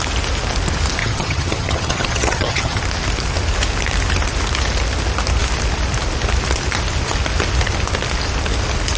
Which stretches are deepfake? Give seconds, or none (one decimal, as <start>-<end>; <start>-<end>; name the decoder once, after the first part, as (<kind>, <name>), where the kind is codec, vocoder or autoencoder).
1.0-2.8 (vocoder, HiFi-GAN)